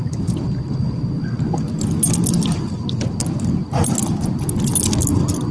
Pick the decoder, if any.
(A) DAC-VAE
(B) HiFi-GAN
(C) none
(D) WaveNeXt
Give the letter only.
C